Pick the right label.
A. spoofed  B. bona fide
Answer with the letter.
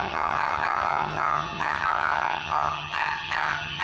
A